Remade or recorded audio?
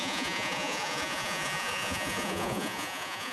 remade